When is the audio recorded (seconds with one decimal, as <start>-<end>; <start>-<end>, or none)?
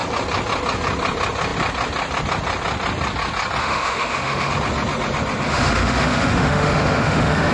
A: 0.0-3.6; 4.5-5.5